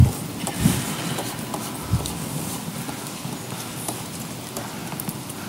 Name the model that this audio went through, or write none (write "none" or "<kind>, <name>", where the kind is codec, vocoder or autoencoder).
none